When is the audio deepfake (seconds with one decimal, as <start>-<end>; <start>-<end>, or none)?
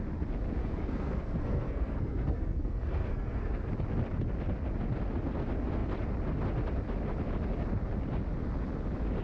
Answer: 0.6-3.7